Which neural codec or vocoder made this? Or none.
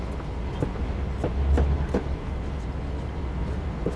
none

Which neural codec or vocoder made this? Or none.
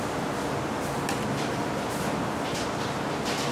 none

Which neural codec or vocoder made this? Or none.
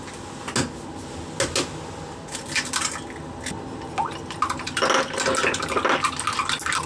none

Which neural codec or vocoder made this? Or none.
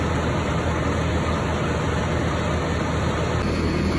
none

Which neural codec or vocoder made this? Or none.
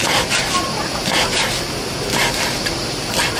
none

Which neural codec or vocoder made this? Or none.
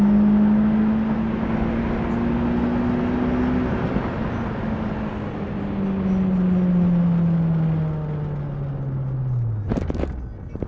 none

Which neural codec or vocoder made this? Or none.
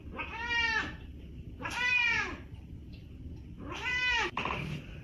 none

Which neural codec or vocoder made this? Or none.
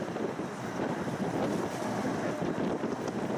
none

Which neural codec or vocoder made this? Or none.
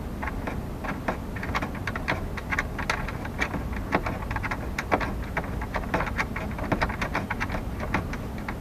none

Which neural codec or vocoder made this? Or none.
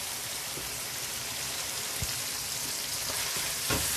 none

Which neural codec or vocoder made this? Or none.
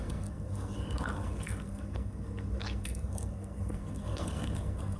codec, SNAC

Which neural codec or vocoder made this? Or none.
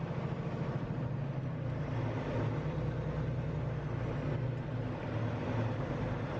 none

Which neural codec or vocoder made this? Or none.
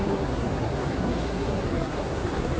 codec, SNAC